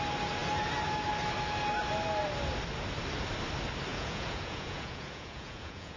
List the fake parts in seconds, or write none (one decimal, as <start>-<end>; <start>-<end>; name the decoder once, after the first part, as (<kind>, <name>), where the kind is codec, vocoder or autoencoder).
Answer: 3.9-6.0 (vocoder, Vocos)